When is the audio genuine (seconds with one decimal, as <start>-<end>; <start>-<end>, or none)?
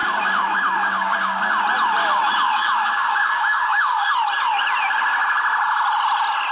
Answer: 1.6-2.0; 4.1-6.5